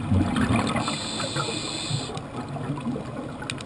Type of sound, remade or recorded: recorded